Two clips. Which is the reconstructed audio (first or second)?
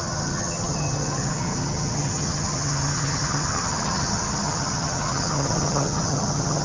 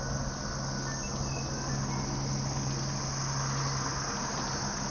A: first